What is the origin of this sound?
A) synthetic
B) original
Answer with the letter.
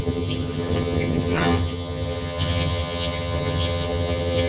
A